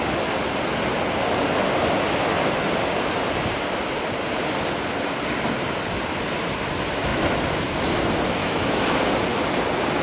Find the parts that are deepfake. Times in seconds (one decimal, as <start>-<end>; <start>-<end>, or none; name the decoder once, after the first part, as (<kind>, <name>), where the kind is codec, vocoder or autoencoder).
8.4-9.0 (autoencoder, DAC-VAE)